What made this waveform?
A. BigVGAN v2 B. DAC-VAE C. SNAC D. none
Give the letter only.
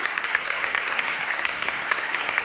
C